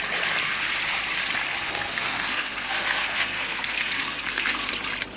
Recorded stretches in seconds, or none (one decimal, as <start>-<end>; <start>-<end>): 0.0-1.6; 4.7-5.2